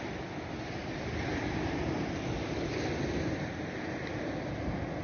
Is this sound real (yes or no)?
yes